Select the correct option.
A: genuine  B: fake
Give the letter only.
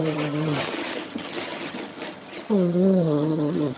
B